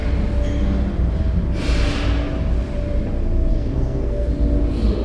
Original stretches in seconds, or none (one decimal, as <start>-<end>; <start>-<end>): 0.0-3.5; 4.3-5.0